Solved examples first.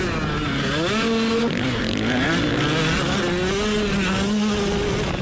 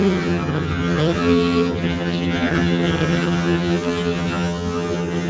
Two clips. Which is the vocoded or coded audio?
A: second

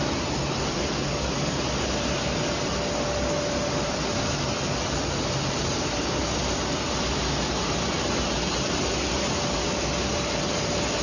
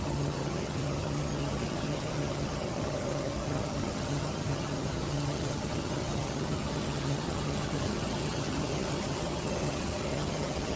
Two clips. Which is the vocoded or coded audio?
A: second